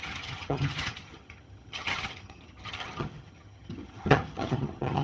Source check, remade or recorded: remade